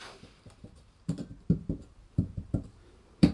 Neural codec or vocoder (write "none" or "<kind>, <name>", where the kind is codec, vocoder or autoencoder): vocoder, BigVGAN v2